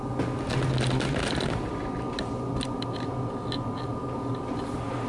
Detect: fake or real real